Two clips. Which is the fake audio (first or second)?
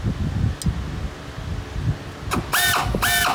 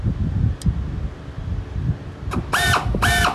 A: second